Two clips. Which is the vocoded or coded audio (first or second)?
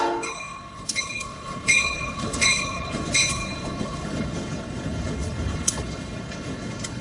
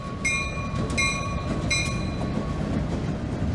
first